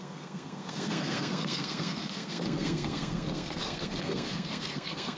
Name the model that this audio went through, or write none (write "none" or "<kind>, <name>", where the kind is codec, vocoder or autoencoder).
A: codec, SNAC